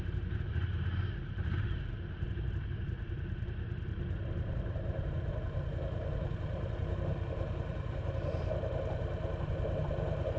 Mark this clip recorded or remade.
recorded